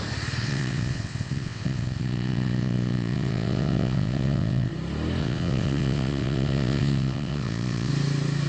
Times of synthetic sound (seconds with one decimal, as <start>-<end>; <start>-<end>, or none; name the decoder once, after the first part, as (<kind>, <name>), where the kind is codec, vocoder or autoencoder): 0.4-4.7 (vocoder, WaveNeXt); 5.2-7.9